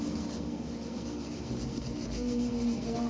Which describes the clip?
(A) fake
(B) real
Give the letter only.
A